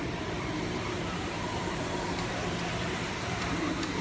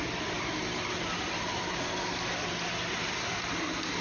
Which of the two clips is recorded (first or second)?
second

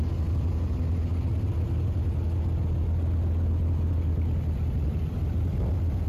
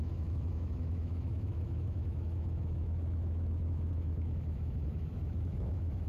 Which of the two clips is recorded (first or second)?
first